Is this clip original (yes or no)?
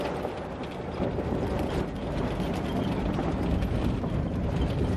yes